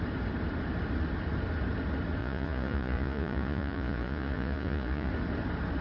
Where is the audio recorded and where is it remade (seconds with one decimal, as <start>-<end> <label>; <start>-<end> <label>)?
0.0-2.2 recorded; 2.2-5.1 remade; 5.1-5.8 recorded